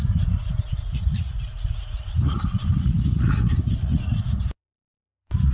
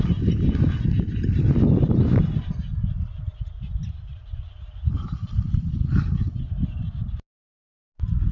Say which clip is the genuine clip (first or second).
second